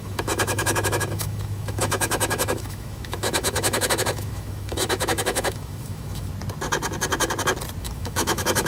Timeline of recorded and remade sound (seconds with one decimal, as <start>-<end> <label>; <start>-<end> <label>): 0.0-6.3 remade; 6.3-7.8 recorded; 7.8-8.7 remade